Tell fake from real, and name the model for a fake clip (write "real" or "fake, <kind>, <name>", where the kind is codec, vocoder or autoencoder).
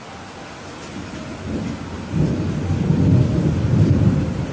real